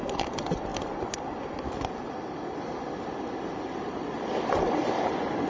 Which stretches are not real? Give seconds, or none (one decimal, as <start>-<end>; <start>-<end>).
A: 3.5-4.1